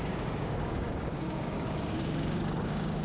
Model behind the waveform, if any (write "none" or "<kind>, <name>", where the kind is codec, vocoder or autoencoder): codec, DAC